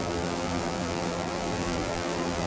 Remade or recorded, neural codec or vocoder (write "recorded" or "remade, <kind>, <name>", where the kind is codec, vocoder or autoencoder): remade, vocoder, BigVGAN v2